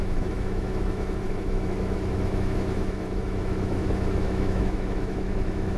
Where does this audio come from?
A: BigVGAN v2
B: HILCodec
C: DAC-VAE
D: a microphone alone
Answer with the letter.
C